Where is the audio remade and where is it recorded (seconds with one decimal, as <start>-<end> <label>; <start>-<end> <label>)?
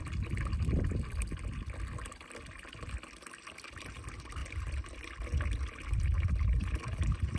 0.0-7.4 recorded